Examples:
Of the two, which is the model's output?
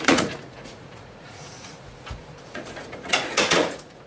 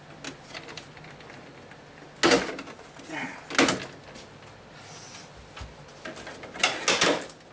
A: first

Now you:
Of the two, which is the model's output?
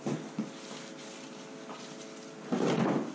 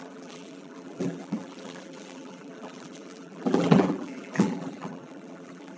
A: second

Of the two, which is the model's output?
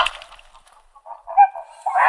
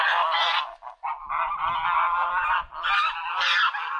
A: first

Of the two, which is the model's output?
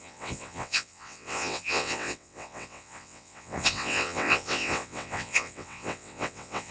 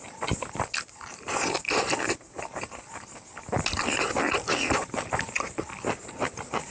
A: first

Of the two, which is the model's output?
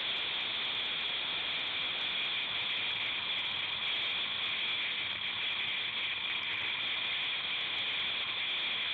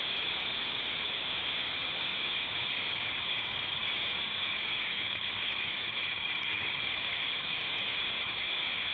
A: second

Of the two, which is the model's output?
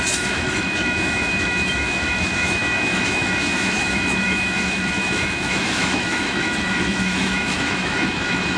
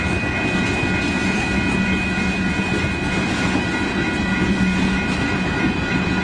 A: first